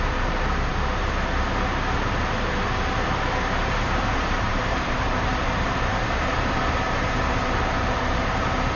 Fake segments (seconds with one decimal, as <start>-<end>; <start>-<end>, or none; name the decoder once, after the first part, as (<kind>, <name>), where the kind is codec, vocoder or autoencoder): 0.0-0.7 (vocoder, BigVGAN v2); 3.6-8.8